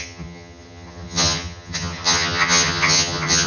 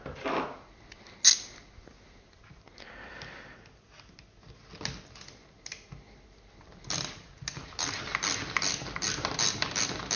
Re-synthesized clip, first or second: first